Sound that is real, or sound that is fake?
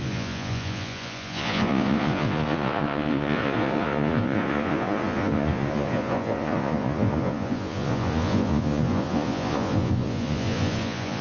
fake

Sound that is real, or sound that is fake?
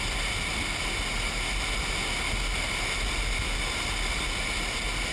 real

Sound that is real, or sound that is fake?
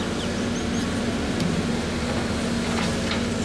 real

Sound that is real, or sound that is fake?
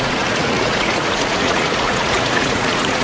fake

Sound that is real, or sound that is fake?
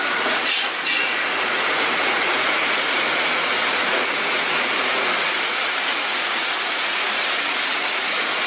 fake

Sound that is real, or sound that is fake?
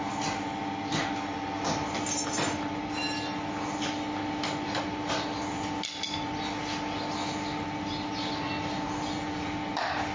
real